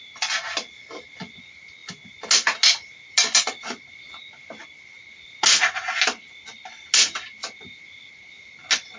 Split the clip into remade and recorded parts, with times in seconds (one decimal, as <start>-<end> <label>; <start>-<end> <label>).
0.0-9.0 recorded